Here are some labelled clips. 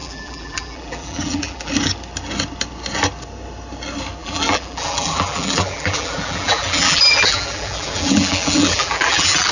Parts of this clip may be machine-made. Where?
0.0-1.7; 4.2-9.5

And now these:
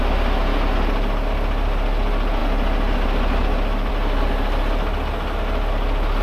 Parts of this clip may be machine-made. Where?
none